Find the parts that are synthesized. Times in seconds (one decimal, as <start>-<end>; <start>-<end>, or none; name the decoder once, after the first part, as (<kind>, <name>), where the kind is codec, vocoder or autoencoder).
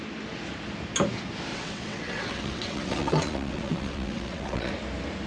1.5-4.7 (vocoder, WaveNeXt)